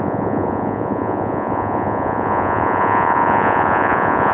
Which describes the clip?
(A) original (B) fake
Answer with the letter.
B